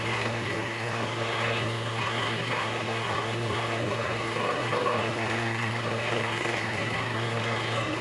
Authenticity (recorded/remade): remade